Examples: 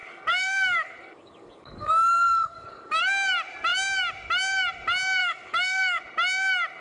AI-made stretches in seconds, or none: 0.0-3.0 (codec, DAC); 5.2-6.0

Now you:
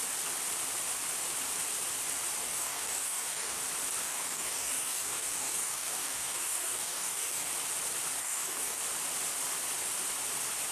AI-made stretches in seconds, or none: 2.4-3.6 (codec, DAC); 4.0-7.5; 8.2-8.8

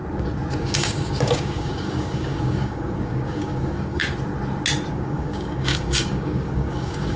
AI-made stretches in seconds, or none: 0.6-4.0 (codec, DAC); 4.9-7.2

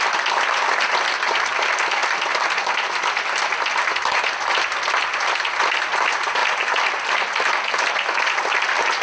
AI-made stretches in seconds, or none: none

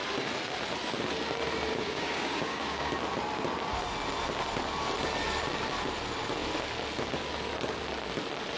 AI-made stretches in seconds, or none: 1.7-2.9 (codec, DAC)

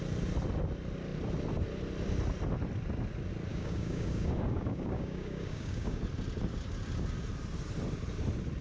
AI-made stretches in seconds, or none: 3.5-6.0 (codec, DAC)

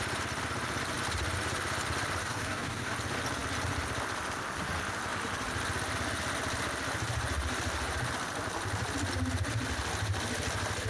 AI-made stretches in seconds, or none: 2.2-2.9 (codec, DAC)